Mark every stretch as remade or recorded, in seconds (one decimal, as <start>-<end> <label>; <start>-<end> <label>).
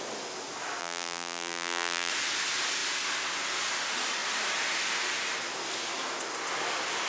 0.0-0.8 recorded; 0.8-2.1 remade; 2.1-7.1 recorded